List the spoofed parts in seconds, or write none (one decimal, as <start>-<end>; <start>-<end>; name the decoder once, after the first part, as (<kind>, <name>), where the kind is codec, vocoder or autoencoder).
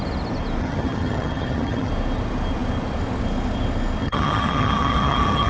0.6-1.9 (vocoder, HiFi-GAN); 4.0-5.5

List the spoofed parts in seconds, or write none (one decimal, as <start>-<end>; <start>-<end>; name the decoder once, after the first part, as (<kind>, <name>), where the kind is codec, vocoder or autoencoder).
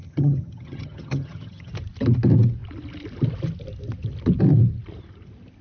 0.0-1.7 (vocoder, HiFi-GAN)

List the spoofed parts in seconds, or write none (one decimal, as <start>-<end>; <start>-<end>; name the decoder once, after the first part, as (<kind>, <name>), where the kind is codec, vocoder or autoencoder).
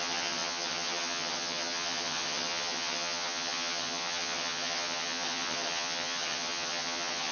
0.0-7.3 (vocoder, HiFi-GAN)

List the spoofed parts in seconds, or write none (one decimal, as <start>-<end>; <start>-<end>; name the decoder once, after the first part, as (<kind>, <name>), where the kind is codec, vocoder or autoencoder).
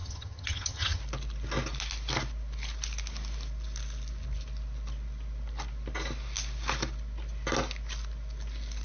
0.0-1.0 (vocoder, HiFi-GAN)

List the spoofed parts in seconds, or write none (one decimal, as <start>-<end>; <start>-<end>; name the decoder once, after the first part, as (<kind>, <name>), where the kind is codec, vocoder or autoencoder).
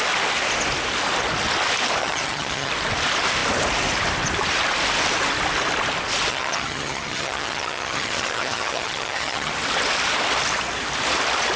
2.0-2.7 (vocoder, HiFi-GAN); 6.3-9.5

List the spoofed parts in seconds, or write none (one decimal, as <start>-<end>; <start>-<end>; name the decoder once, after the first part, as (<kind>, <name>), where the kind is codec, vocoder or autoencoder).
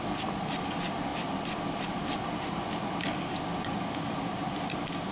none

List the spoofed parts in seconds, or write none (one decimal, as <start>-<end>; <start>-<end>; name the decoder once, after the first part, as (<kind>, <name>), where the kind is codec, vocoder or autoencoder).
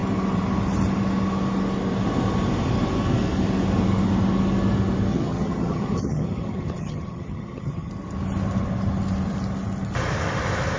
5.1-7.9 (vocoder, HiFi-GAN)